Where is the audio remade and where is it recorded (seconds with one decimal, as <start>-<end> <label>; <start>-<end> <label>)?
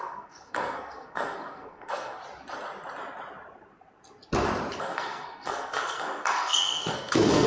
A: 0.0-2.2 remade; 2.2-4.8 recorded; 4.8-7.5 remade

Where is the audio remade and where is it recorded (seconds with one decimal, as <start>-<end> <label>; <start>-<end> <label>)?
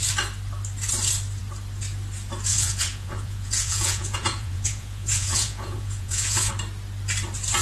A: 0.0-2.5 recorded; 2.5-6.5 remade; 6.5-7.6 recorded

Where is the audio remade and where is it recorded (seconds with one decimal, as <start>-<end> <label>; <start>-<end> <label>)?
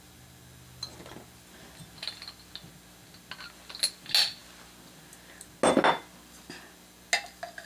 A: 0.0-7.7 recorded